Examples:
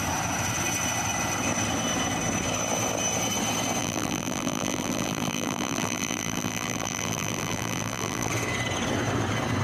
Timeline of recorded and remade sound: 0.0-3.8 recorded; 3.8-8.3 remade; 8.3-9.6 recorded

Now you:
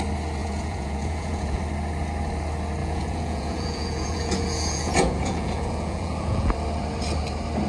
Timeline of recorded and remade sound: 0.0-0.4 recorded; 0.4-1.6 remade; 1.6-2.8 recorded; 2.8-6.5 remade; 6.5-7.7 recorded

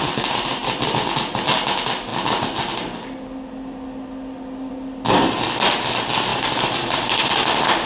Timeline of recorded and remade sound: 0.0-0.6 recorded; 0.6-1.1 remade; 1.1-6.3 recorded; 6.3-7.9 remade

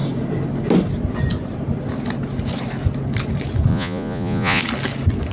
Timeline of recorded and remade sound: 0.0-3.7 recorded; 3.7-4.6 remade; 4.6-5.3 recorded

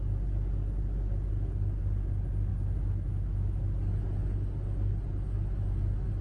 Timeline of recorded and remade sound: 0.0-6.2 recorded

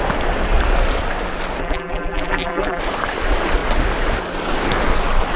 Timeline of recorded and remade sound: 0.0-1.6 recorded; 1.6-2.8 remade; 2.8-5.4 recorded

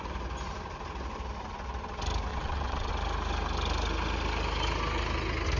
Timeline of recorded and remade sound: 0.0-2.3 recorded; 2.3-2.9 remade; 2.9-5.6 recorded